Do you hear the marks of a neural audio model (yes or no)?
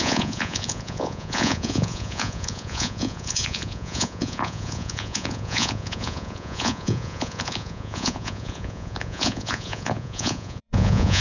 yes